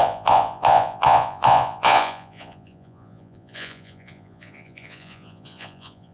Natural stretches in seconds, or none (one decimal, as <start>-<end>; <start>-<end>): none